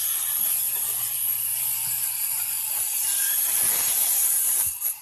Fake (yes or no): yes